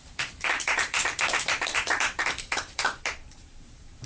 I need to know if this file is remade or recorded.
remade